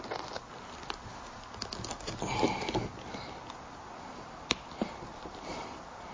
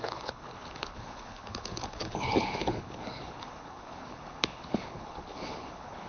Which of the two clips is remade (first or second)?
second